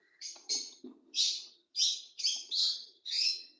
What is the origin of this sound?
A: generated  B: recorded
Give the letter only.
A